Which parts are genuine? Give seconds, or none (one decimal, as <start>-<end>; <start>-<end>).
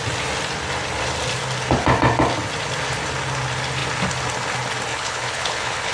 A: 0.0-4.9